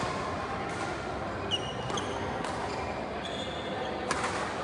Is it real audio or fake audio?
real